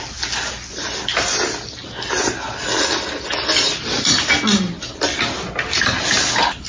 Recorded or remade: recorded